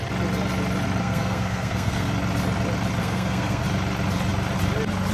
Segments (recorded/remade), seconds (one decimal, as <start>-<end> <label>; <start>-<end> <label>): 0.0-1.0 recorded; 1.0-2.1 remade; 2.1-3.0 recorded; 3.0-3.6 remade; 3.6-5.1 recorded